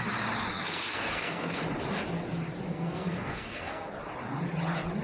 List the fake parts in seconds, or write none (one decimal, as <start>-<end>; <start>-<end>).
0.5-1.6; 2.7-3.9